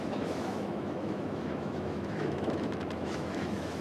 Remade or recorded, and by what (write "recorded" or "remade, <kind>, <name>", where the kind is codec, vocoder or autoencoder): remade, autoencoder, DAC-VAE